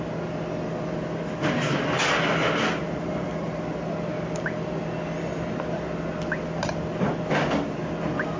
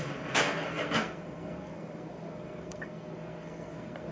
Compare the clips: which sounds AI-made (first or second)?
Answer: second